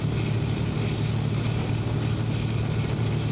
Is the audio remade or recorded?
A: recorded